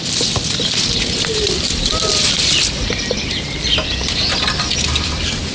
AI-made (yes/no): no